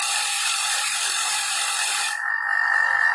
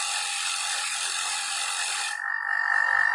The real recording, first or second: second